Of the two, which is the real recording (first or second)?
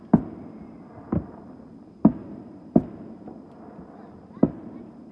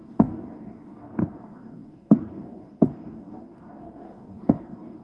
first